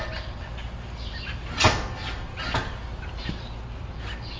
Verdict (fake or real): real